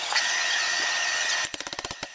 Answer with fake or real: real